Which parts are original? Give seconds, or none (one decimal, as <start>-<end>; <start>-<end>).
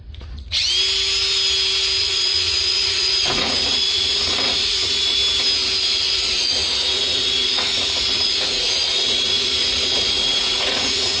0.6-2.0; 5.2-5.8